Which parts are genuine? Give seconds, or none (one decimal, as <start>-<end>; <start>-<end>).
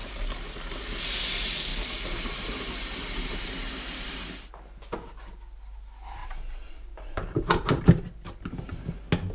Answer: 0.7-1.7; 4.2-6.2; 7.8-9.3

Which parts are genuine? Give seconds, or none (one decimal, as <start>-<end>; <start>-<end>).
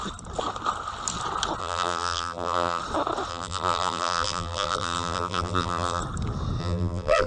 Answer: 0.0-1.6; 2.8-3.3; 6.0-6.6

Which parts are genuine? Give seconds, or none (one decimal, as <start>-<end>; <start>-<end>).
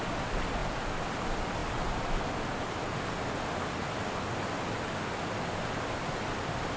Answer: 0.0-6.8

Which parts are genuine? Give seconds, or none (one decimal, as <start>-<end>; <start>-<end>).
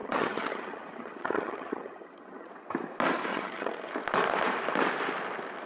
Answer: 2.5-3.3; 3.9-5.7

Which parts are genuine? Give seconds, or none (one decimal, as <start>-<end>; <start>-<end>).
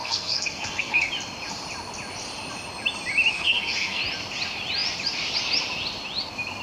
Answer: 1.1-3.3; 4.0-6.6